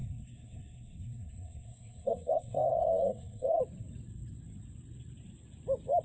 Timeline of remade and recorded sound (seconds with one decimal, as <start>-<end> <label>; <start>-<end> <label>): 0.0-3.6 remade; 3.6-6.0 recorded